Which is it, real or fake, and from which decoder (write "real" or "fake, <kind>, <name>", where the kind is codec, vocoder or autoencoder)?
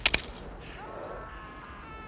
real